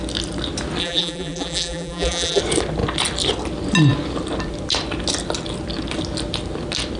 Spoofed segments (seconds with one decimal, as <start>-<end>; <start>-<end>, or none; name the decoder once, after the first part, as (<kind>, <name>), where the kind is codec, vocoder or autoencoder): 0.8-2.4 (vocoder, BigVGAN v2)